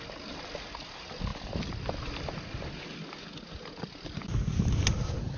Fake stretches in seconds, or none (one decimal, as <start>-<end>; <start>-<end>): none